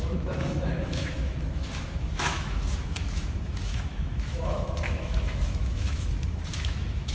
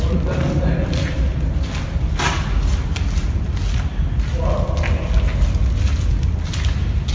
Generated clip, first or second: first